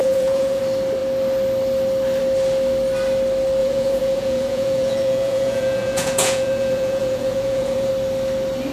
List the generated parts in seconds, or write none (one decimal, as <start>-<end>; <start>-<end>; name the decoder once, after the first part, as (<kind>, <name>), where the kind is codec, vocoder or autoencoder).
0.0-0.6 (vocoder, Vocos); 3.6-7.9